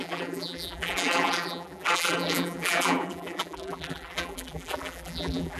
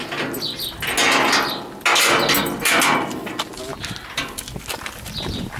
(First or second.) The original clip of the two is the second